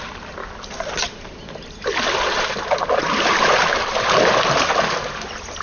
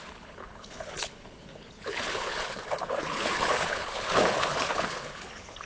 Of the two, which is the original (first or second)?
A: first